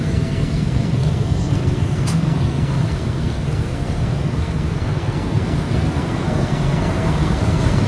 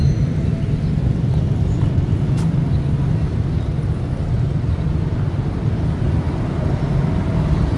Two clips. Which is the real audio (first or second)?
second